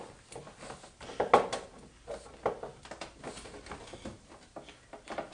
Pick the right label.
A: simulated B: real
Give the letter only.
B